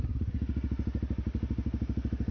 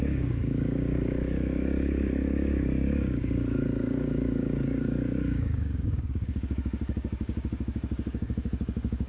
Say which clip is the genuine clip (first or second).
first